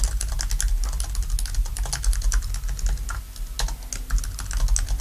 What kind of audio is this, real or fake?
real